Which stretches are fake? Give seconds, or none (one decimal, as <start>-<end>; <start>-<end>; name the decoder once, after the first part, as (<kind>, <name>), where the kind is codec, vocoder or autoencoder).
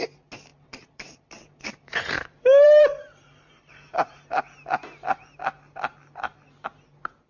0.5-4.4 (vocoder, BigVGAN v2)